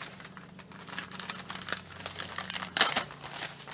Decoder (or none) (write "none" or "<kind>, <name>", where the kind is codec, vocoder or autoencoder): none